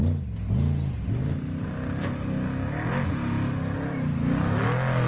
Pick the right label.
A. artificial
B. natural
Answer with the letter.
B